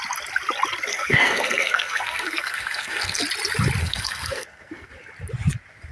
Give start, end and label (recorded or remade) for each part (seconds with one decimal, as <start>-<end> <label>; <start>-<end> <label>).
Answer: 0.0-0.9 recorded; 0.9-3.2 remade; 3.2-3.8 recorded; 3.8-4.9 remade; 4.9-5.9 recorded